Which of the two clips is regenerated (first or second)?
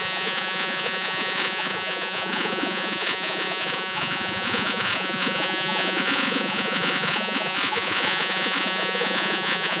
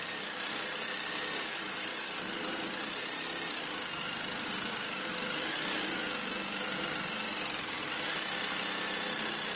first